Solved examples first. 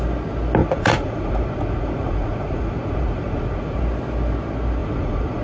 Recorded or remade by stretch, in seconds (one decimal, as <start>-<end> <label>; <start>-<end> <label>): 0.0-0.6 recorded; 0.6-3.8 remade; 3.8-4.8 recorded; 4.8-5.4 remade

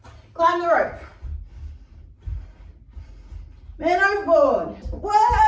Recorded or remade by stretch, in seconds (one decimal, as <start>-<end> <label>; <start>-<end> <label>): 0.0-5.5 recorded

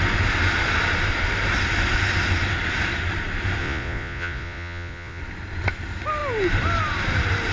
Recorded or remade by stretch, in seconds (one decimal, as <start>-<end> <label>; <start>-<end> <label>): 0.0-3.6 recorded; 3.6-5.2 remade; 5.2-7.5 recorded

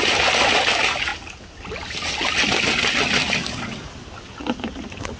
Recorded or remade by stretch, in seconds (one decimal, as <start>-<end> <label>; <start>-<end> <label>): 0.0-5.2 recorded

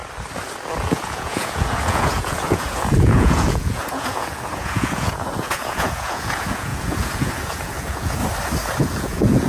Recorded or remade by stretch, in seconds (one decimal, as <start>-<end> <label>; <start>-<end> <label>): 0.0-0.9 recorded; 0.9-8.2 remade; 8.2-8.8 recorded; 8.8-9.5 remade

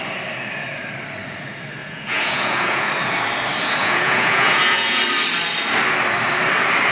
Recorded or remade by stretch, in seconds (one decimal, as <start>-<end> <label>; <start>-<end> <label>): 0.0-1.8 recorded; 1.8-2.9 remade; 2.9-3.8 recorded; 3.8-5.0 remade; 5.0-6.9 recorded